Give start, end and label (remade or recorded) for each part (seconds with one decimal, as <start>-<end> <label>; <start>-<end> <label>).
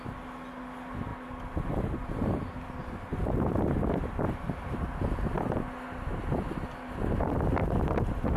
0.0-8.4 recorded